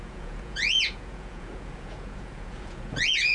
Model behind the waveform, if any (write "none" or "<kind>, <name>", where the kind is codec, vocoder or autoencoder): vocoder, Vocos